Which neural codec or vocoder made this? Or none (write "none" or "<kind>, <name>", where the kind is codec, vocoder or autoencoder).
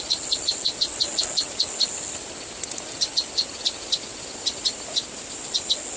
none